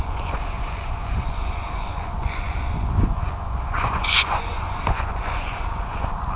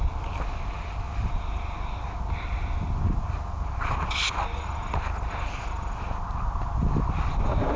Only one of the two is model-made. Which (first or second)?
first